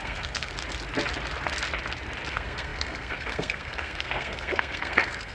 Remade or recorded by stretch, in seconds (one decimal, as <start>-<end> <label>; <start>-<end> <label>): 0.0-0.5 remade; 0.5-2.3 recorded; 2.3-5.3 remade